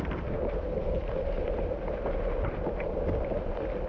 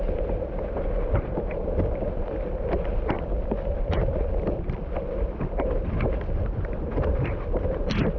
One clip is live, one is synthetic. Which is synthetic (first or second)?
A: second